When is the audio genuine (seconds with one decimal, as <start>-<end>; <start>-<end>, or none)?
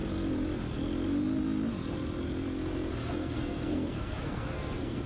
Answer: 0.0-3.1